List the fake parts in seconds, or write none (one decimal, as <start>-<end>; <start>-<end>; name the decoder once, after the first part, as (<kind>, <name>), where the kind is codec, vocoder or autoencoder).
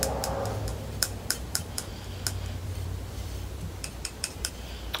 0.7-1.9 (vocoder, BigVGAN v2); 2.6-4.5